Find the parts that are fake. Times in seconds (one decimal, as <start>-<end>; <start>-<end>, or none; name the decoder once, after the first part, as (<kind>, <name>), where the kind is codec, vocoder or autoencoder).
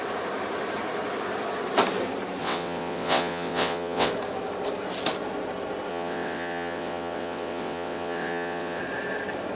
2.4-4.1 (vocoder, WaveNeXt); 5.9-8.8